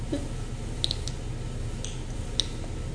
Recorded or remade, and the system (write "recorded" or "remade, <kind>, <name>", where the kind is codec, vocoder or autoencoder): recorded